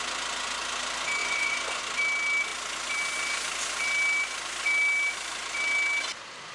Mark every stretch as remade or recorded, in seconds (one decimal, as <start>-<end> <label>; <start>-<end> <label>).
0.0-1.2 recorded; 1.2-1.8 remade; 1.8-6.5 recorded